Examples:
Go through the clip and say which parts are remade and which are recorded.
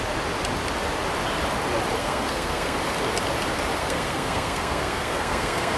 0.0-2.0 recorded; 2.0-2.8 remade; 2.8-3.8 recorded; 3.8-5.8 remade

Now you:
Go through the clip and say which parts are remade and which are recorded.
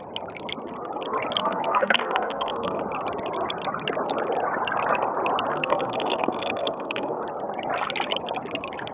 0.0-1.4 recorded; 1.4-2.8 remade; 2.8-5.5 recorded; 5.5-7.2 remade; 7.2-8.9 recorded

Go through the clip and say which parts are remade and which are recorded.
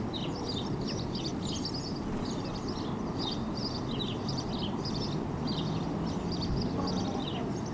0.0-7.7 recorded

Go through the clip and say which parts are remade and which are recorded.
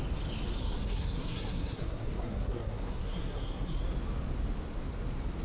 0.0-0.6 recorded; 0.6-3.8 remade; 3.8-5.4 recorded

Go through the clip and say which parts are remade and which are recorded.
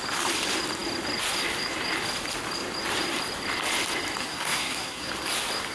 0.0-4.2 recorded; 4.2-5.1 remade; 5.1-5.7 recorded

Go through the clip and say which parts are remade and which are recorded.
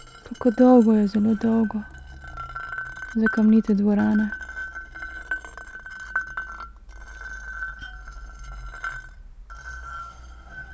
0.0-10.0 recorded; 10.0-10.7 remade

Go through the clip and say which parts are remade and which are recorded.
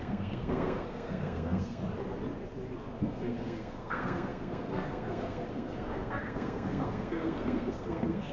0.0-1.8 remade; 1.8-3.0 recorded; 3.0-8.3 remade